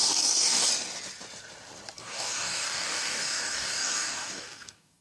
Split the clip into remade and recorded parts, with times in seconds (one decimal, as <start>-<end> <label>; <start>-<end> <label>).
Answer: 0.0-0.7 remade; 0.7-2.0 recorded; 2.0-5.0 remade